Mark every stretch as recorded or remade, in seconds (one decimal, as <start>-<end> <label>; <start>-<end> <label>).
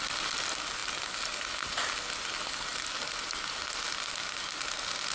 0.0-5.1 recorded